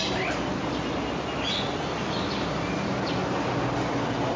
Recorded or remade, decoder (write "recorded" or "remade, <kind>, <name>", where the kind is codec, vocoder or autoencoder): recorded